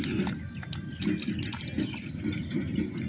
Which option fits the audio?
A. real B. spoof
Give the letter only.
A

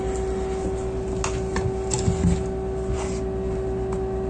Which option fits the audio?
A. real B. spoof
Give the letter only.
A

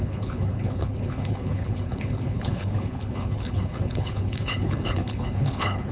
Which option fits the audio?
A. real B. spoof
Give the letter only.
B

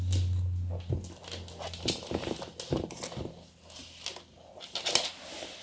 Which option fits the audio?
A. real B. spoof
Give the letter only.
A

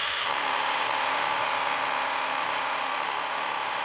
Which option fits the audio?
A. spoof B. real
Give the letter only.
A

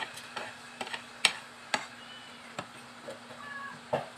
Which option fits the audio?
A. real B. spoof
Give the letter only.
A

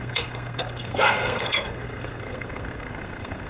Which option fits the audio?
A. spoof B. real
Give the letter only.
A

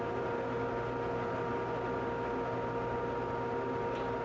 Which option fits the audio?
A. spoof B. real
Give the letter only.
B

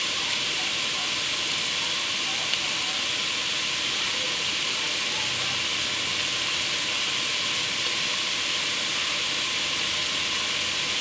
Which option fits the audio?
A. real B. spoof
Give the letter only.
B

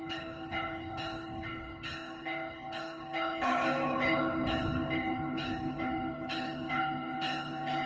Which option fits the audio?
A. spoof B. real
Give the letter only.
A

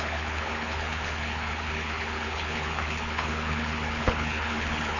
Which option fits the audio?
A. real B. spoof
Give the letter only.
B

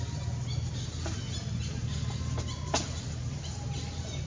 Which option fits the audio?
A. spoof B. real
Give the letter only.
B